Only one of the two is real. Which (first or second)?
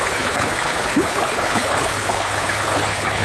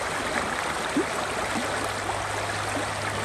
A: second